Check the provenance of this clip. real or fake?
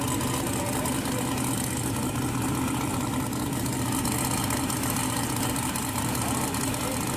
real